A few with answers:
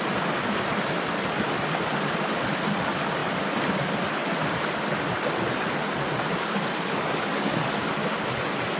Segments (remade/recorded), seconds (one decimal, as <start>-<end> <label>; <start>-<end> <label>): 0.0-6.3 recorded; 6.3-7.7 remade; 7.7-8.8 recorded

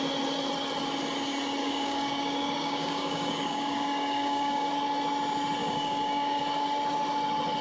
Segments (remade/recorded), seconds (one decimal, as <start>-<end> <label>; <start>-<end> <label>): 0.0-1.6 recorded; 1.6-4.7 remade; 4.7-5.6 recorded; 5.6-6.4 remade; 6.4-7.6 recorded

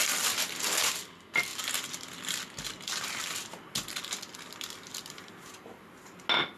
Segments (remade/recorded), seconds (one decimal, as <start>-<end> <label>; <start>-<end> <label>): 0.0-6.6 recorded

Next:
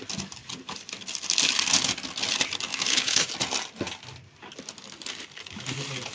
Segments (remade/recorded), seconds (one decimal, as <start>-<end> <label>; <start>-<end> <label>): 0.0-2.7 recorded; 2.7-3.3 remade; 3.3-6.1 recorded

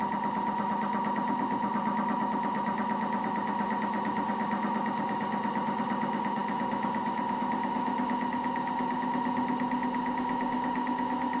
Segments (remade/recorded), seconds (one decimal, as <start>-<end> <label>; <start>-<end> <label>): 0.0-11.4 recorded

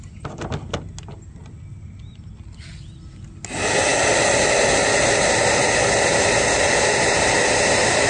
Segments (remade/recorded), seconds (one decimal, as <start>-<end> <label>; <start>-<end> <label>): 0.0-8.1 recorded